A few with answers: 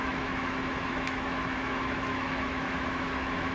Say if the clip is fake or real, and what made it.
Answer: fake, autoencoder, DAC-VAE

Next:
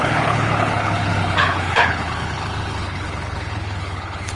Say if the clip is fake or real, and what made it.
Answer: fake, codec, HILCodec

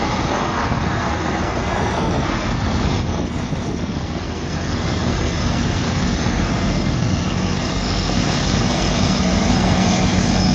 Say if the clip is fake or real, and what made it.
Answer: fake, codec, SNAC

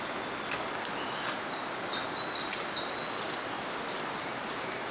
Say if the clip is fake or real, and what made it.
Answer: real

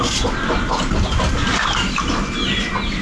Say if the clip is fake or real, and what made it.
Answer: real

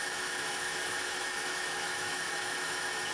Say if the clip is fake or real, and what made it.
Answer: fake, autoencoder, DAC-VAE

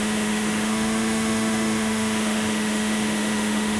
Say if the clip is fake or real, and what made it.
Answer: fake, autoencoder, DAC-VAE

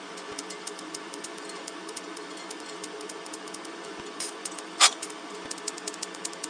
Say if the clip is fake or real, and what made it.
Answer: fake, vocoder, Vocos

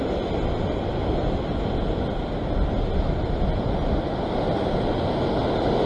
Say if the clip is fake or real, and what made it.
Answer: real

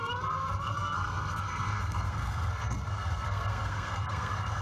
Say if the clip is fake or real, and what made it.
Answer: fake, codec, SNAC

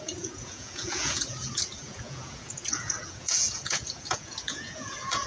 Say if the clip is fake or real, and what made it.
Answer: fake, vocoder, Vocos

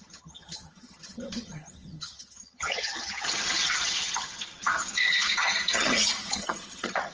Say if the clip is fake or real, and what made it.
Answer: fake, vocoder, HiFi-GAN